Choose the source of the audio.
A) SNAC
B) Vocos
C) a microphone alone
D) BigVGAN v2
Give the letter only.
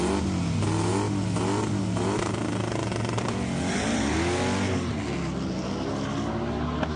C